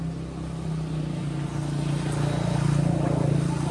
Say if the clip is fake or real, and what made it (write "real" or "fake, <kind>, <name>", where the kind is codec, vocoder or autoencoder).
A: real